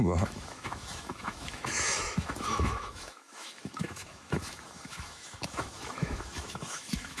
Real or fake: fake